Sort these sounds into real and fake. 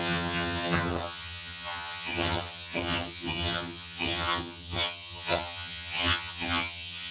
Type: fake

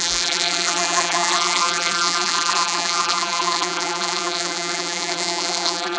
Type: fake